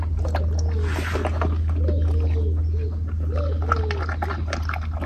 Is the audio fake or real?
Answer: real